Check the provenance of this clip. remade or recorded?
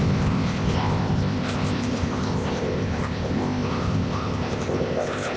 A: remade